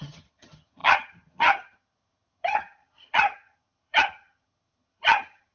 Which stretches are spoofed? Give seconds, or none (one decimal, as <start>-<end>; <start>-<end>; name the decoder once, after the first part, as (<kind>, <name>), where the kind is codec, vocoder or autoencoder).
0.0-5.5 (vocoder, HiFi-GAN)